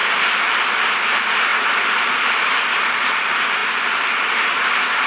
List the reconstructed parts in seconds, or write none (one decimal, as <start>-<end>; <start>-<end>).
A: none